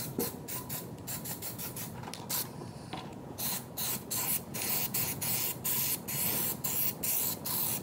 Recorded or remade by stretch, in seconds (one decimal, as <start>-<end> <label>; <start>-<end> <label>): 0.0-3.1 recorded; 3.1-3.7 remade; 3.7-4.5 recorded; 4.5-5.4 remade; 5.4-7.8 recorded